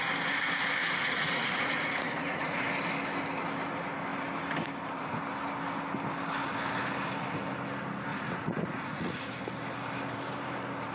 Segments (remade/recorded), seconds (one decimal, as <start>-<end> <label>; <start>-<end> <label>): 0.0-0.8 recorded; 0.8-2.6 remade; 2.6-8.1 recorded; 8.1-9.4 remade; 9.4-10.9 recorded